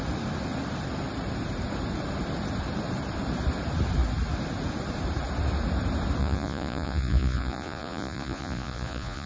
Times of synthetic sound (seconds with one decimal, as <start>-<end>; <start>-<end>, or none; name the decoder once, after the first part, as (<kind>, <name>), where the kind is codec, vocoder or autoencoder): 6.2-9.3 (vocoder, Vocos)